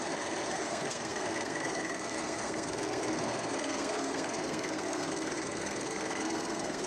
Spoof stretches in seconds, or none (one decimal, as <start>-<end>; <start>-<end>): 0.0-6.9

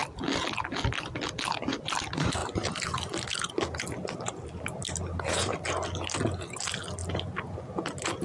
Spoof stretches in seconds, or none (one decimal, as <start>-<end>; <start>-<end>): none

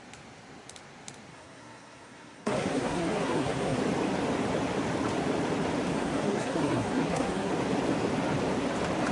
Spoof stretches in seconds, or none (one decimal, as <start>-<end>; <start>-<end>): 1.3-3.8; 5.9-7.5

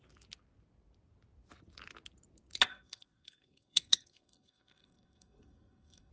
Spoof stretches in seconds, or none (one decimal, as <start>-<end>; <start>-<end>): 2.7-6.1

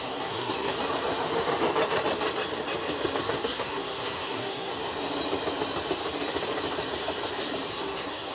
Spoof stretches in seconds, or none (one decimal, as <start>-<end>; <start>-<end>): 0.0-0.7; 3.2-4.7; 7.7-8.3